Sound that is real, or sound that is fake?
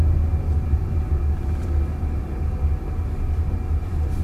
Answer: real